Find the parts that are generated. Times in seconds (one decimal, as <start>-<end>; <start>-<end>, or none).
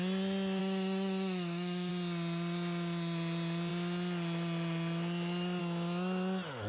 0.6-1.9